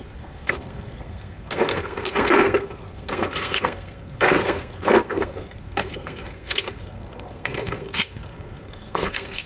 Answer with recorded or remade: remade